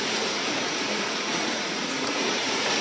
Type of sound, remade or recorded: remade